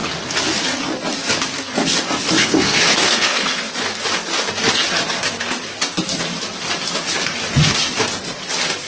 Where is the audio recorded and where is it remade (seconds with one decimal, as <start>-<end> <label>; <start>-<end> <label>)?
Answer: 0.0-2.4 recorded; 2.4-3.7 remade; 3.7-8.9 recorded